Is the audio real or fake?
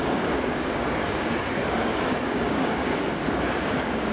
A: fake